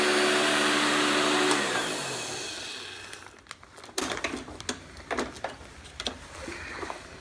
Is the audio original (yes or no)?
yes